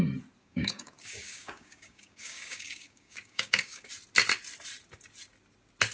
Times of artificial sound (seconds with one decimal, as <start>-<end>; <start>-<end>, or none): 0.4-3.9